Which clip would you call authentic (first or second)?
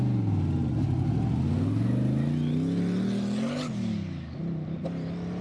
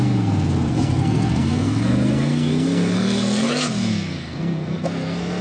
first